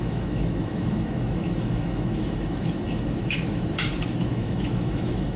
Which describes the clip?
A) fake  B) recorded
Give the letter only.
A